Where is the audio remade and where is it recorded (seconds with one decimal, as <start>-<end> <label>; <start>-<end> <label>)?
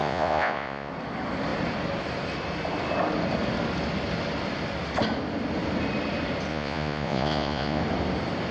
0.0-0.9 remade; 0.9-6.5 recorded; 6.5-7.8 remade; 7.8-8.5 recorded